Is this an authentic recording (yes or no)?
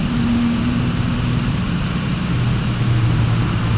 no